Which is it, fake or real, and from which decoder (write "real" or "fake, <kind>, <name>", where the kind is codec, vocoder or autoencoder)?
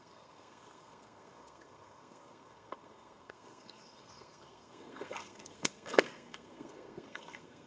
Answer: fake, codec, SNAC